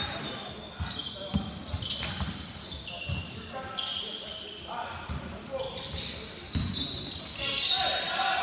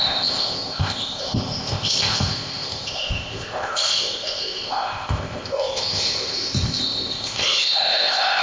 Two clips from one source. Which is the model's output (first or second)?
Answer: second